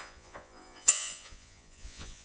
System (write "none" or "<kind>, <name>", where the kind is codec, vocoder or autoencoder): vocoder, Vocos